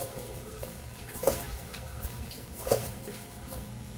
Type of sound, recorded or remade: remade